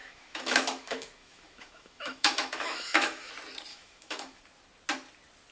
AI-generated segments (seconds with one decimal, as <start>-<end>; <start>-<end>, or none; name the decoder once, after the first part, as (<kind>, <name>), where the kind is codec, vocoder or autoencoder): 0.0-3.3 (autoencoder, DAC-VAE); 3.7-4.4

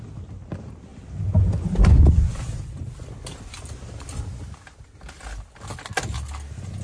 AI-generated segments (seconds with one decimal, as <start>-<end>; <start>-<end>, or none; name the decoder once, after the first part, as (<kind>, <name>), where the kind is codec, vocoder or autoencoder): none

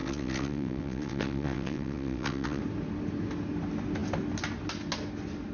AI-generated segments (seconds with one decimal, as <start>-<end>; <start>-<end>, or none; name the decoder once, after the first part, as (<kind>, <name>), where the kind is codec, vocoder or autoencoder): 0.0-2.6 (vocoder, WaveNeXt)

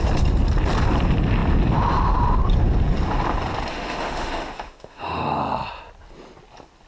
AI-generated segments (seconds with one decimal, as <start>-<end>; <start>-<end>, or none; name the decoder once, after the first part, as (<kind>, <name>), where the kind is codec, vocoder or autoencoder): 3.7-5.4 (autoencoder, DAC-VAE)

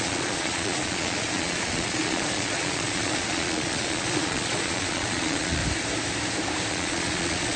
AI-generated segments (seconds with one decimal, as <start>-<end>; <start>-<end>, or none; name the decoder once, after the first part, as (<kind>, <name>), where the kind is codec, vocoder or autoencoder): 0.0-5.6 (vocoder, Vocos); 6.7-7.6

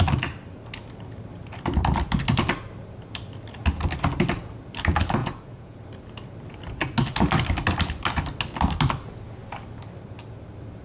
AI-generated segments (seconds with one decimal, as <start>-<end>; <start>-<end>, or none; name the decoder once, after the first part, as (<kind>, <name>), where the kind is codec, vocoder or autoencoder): 5.2-5.8 (vocoder, Vocos)